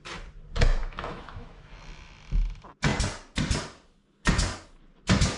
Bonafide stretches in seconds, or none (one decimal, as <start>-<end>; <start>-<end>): 0.0-0.8; 1.7-5.4